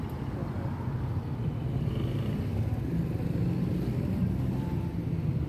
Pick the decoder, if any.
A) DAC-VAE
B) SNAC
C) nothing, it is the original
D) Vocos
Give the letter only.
C